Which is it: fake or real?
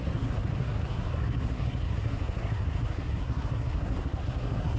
fake